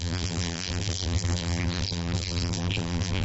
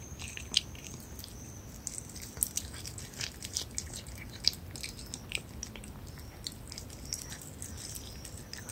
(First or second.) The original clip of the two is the second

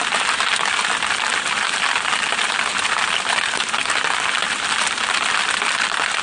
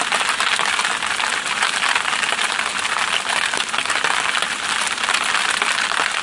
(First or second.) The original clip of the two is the second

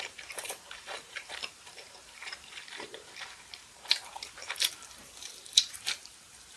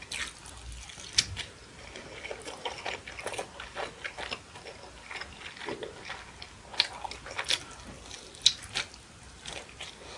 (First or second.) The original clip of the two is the second